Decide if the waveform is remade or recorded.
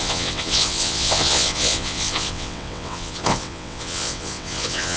remade